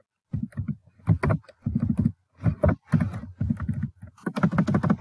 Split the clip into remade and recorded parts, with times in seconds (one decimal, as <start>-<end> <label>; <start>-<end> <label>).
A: 0.0-5.0 recorded